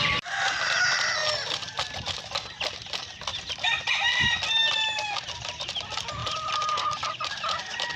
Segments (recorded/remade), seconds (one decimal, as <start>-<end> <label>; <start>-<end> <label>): 0.0-3.3 recorded; 3.3-3.9 remade; 3.9-6.2 recorded; 6.2-7.2 remade; 7.2-8.0 recorded